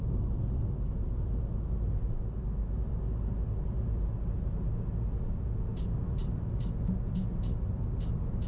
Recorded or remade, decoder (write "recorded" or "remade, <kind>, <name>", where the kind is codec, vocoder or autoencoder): recorded